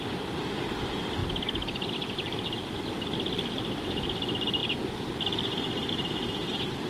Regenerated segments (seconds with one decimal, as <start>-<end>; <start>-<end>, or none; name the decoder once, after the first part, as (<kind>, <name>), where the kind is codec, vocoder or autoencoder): none